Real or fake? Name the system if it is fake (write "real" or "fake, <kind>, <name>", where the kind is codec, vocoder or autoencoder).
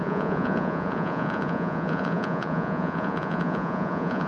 fake, vocoder, Vocos